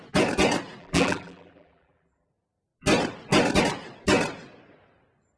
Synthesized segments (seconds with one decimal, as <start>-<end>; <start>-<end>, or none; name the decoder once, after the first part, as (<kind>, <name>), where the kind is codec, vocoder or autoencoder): 0.8-2.3 (vocoder, BigVGAN v2)